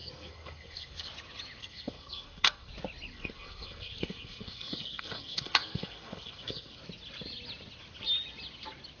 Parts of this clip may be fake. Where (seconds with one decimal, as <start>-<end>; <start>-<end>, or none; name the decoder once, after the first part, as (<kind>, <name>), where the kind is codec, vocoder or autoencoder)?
0.0-1.1 (codec, SNAC); 1.6-2.7; 3.1-6.8